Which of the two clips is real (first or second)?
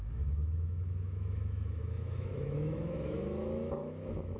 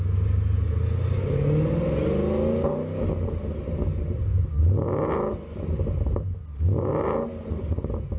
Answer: second